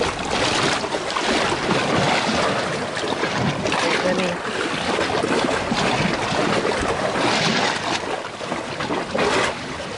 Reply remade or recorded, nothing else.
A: recorded